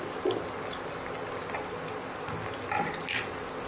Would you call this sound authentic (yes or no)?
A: yes